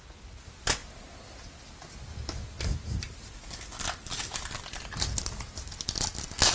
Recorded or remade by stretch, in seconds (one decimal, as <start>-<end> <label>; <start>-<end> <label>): 0.0-6.5 recorded